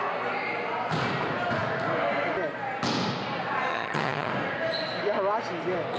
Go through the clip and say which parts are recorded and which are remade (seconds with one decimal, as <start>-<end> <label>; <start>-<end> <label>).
0.0-3.7 recorded; 3.7-4.3 remade; 4.3-6.0 recorded